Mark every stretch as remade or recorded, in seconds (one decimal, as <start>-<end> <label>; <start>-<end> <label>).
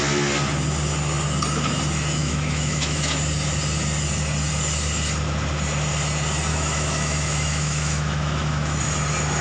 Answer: 0.0-2.2 recorded; 2.2-3.2 remade; 3.2-6.5 recorded; 6.5-8.8 remade; 8.8-9.4 recorded